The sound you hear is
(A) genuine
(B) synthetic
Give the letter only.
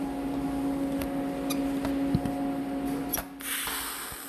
A